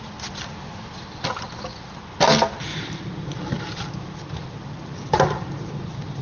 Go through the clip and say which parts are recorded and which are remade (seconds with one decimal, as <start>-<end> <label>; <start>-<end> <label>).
0.0-2.7 recorded; 2.7-3.5 remade; 3.5-6.2 recorded

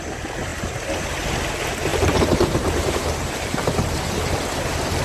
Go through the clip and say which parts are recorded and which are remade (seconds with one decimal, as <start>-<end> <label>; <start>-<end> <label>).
0.0-1.9 recorded; 1.9-5.0 remade

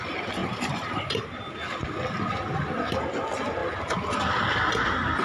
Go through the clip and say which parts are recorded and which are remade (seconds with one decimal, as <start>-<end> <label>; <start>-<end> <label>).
0.0-0.4 recorded; 0.4-1.3 remade; 1.3-5.2 recorded

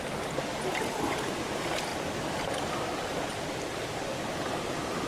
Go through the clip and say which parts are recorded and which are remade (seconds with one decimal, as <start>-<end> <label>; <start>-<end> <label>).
0.0-1.9 recorded; 1.9-3.4 remade; 3.4-5.1 recorded

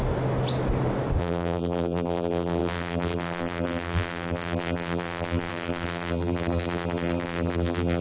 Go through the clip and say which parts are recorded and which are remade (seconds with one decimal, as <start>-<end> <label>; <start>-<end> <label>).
0.0-1.2 recorded; 1.2-8.0 remade

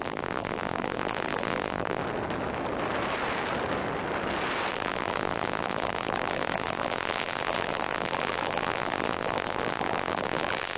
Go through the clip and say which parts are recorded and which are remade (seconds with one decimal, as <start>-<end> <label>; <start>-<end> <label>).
0.0-2.0 remade; 2.0-4.7 recorded; 4.7-10.8 remade